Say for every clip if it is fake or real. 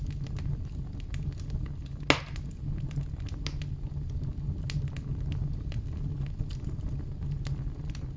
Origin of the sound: real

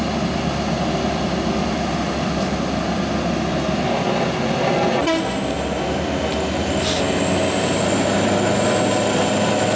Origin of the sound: real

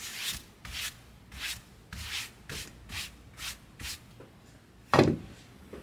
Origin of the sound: real